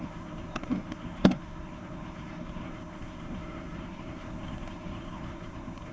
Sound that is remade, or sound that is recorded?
remade